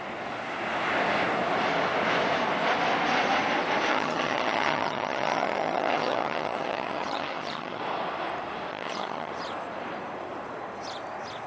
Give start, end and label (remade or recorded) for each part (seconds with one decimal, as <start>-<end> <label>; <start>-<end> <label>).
0.0-3.9 recorded; 3.9-7.8 remade; 7.8-8.7 recorded; 8.7-9.3 remade; 9.3-11.5 recorded